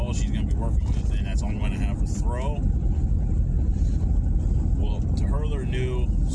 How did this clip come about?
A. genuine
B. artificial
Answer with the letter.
A